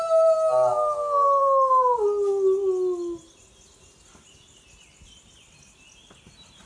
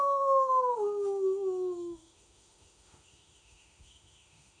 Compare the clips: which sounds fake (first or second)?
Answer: second